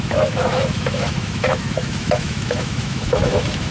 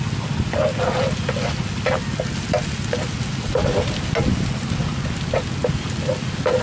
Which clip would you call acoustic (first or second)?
second